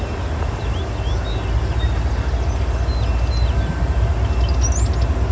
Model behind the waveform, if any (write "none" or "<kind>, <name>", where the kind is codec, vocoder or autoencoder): none